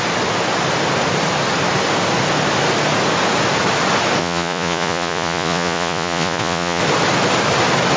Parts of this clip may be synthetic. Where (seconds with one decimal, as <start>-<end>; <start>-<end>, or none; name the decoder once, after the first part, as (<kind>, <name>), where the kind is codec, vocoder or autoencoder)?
4.2-6.8 (vocoder, Vocos)